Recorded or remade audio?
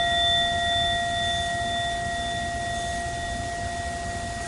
recorded